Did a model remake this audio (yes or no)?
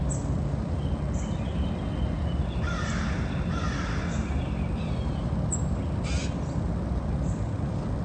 no